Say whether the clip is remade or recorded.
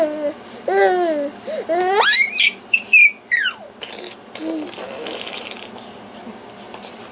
recorded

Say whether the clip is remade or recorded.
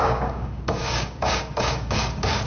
remade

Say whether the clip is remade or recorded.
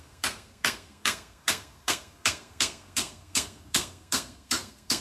remade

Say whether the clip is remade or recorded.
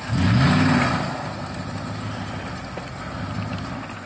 recorded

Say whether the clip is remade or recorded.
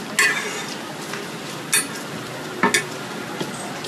recorded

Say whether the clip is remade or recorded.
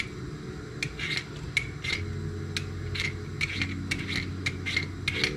recorded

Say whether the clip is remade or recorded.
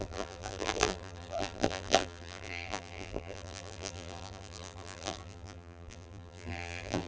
remade